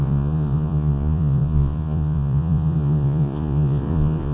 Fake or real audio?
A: fake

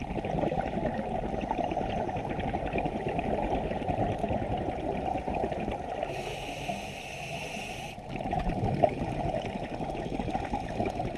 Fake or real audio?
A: real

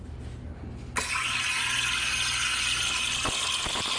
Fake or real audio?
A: real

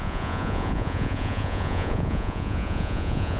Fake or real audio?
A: fake